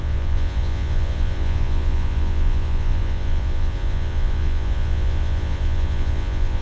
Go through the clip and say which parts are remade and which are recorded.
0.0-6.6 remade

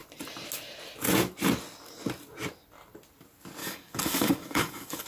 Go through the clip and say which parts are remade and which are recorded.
0.0-3.6 recorded; 3.6-5.1 remade

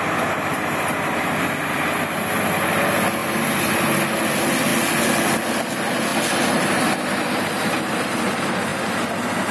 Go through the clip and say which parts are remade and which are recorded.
0.0-3.2 recorded; 3.2-3.8 remade; 3.8-9.5 recorded

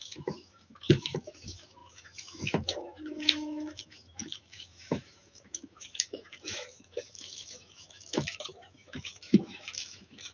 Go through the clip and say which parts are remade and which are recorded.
0.0-10.3 remade

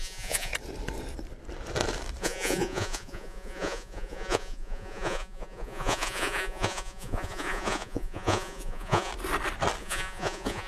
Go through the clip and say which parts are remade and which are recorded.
0.0-0.5 remade; 0.5-2.2 recorded; 2.2-9.1 remade; 9.1-9.8 recorded; 9.8-10.7 remade